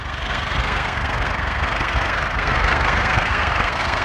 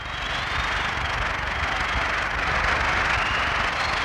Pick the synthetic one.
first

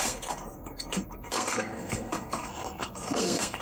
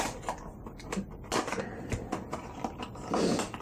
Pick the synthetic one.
first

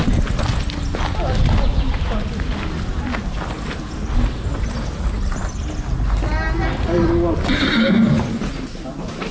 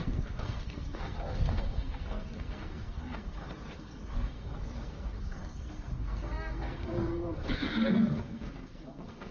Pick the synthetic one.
second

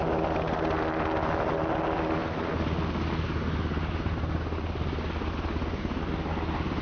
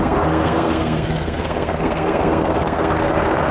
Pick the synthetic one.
second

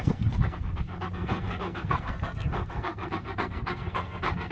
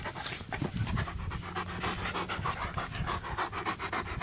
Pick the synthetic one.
first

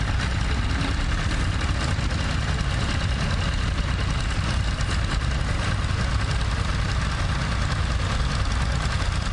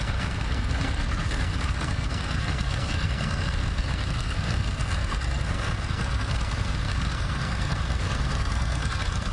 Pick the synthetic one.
second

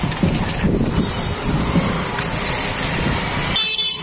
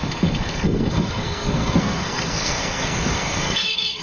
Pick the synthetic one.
second